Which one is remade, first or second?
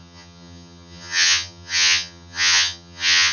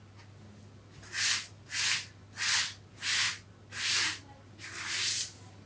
first